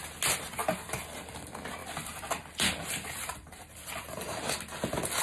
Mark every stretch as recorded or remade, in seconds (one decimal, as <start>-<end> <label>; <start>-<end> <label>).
0.0-1.8 recorded; 1.8-4.4 remade; 4.4-5.2 recorded